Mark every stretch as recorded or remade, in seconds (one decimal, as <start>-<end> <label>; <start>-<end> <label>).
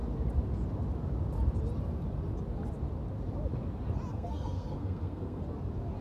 0.0-4.1 recorded; 4.1-5.4 remade; 5.4-6.0 recorded